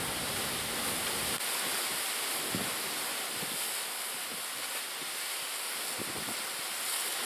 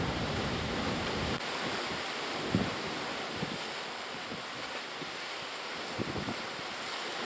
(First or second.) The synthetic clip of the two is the second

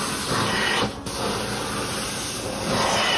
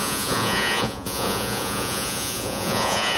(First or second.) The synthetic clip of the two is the second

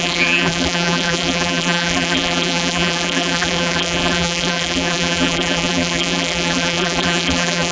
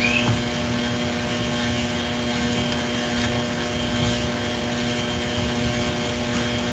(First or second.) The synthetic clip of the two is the first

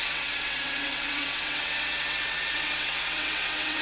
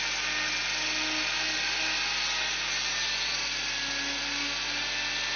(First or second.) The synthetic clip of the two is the first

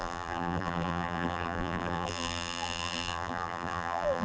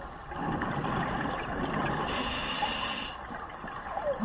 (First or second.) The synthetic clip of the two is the first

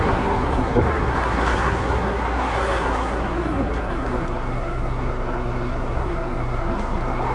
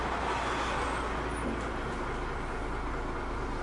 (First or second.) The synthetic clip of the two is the first